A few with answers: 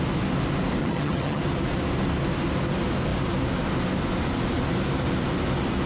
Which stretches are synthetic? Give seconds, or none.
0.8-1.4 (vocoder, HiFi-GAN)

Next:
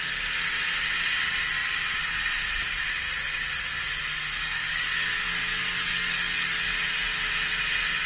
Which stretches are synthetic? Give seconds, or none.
4.3-5.1 (codec, DAC); 5.5-6.6

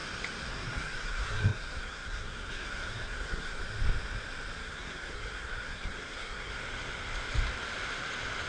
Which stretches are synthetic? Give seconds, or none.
0.5-3.6 (codec, SNAC); 4.6-6.5

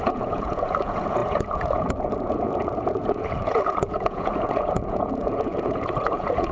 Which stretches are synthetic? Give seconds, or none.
0.0-6.5 (vocoder, Vocos)

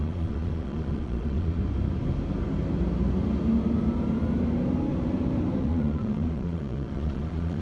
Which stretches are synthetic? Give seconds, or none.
0.0-1.6 (vocoder, Vocos); 5.6-7.6

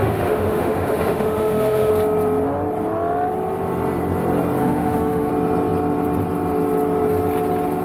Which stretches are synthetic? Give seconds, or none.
0.0-1.9 (autoencoder, DAC-VAE); 4.6-5.3